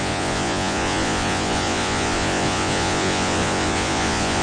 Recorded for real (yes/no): no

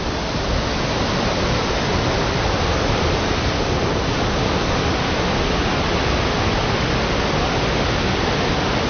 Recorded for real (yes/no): yes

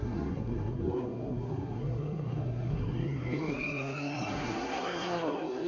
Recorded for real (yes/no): no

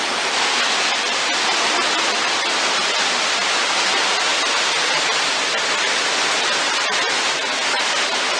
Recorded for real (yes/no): yes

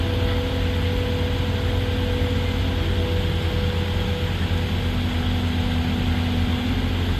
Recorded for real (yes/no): yes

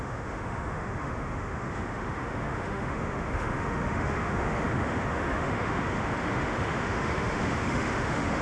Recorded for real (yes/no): no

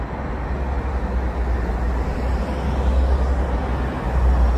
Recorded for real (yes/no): yes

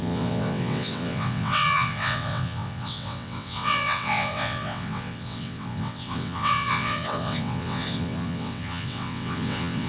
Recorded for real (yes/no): no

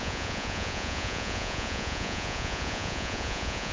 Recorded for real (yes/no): no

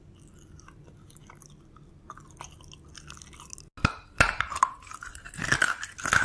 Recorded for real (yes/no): yes